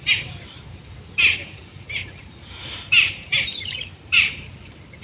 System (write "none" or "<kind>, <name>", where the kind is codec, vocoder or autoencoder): vocoder, BigVGAN v2